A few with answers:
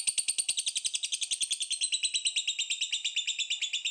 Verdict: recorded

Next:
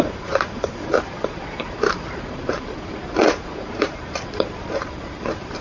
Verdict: remade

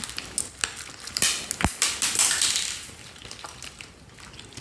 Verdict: recorded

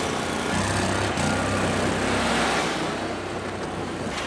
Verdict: recorded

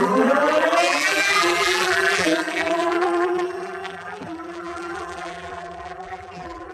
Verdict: remade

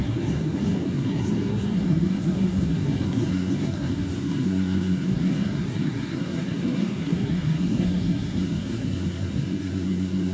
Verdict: remade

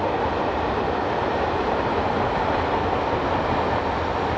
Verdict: recorded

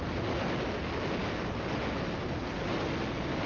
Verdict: recorded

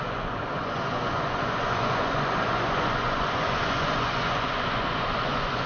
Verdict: remade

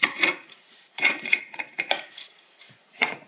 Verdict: remade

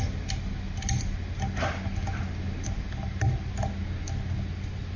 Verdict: recorded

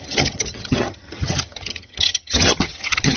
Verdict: remade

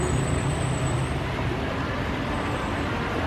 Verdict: remade